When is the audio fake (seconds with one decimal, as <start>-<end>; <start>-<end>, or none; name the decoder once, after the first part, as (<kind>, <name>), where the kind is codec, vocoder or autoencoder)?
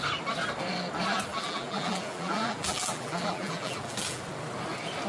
1.3-4.2 (vocoder, BigVGAN v2)